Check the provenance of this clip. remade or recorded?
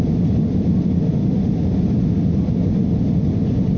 recorded